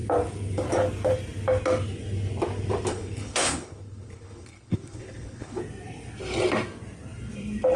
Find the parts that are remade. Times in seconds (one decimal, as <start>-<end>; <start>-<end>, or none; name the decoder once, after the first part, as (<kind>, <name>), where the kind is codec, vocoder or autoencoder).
2.9-5.6 (codec, HILCodec)